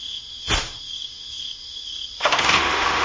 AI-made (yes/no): yes